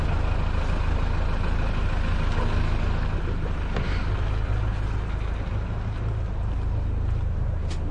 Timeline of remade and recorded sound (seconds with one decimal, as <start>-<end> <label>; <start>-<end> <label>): 0.0-7.9 recorded